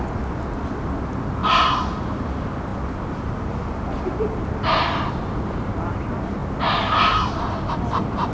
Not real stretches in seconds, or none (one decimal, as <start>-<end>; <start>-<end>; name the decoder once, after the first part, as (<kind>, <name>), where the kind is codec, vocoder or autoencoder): none